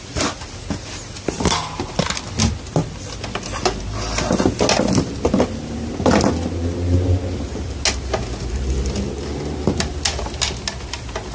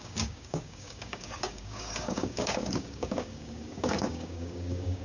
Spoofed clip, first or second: second